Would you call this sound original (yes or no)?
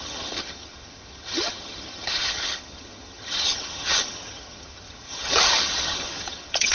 no